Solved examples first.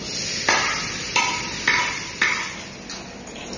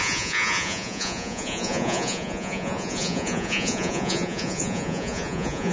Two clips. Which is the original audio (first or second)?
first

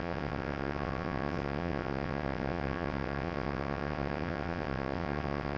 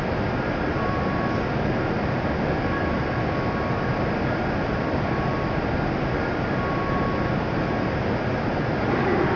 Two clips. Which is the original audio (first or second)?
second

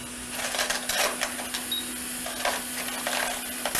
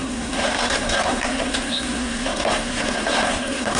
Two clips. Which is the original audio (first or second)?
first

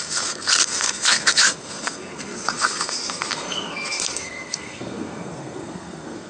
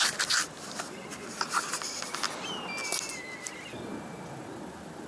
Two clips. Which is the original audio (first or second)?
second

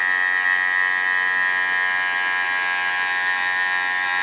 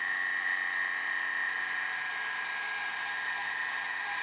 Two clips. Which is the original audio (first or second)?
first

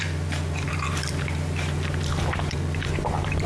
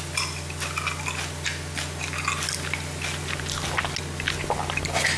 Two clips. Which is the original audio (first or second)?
second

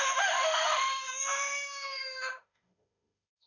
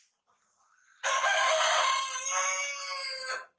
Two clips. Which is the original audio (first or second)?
second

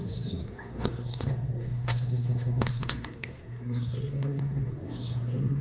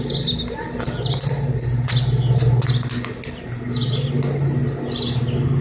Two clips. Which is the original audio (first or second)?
second